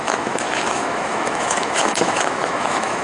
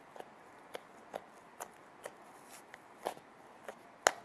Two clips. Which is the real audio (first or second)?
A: second